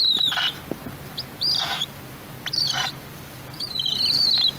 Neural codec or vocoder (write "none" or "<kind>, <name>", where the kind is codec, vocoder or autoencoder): none